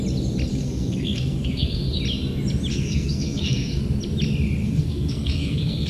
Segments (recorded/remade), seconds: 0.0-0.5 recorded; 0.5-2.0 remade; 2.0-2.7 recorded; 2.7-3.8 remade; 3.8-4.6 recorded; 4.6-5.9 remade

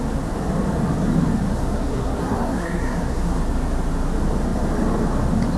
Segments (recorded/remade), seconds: 0.0-1.5 recorded; 1.5-3.4 remade; 3.4-5.6 recorded

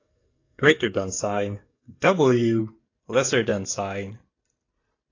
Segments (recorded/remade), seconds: 0.0-2.6 remade; 2.6-5.1 recorded

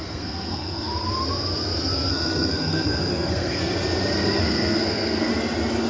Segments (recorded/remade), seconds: 0.0-0.9 remade; 0.9-2.1 recorded; 2.1-3.6 remade; 3.6-4.4 recorded; 4.4-5.3 remade; 5.3-5.9 recorded

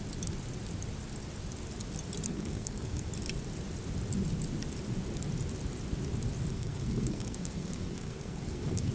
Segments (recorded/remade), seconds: 0.0-2.3 recorded; 2.3-3.1 remade; 3.1-6.5 recorded; 6.5-8.9 remade

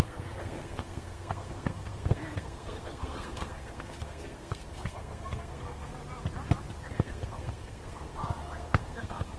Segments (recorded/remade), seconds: 0.0-5.9 remade; 5.9-6.8 recorded; 6.8-9.4 remade

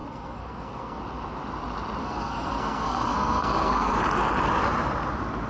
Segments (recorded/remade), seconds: 0.0-1.0 remade; 1.0-2.0 recorded; 2.0-4.0 remade; 4.0-5.5 recorded